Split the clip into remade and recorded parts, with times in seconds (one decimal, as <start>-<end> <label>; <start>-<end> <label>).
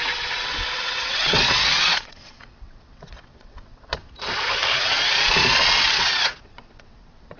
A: 0.0-4.0 remade; 4.0-5.8 recorded; 5.8-7.4 remade